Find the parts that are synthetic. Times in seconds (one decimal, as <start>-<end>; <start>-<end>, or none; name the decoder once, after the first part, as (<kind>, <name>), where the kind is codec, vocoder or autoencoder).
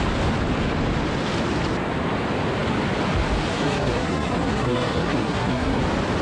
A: 3.5-5.8 (codec, SNAC)